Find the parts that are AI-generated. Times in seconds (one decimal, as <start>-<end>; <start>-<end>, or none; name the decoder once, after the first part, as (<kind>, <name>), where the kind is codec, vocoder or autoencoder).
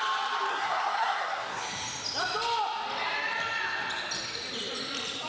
0.5-1.6 (codec, SNAC)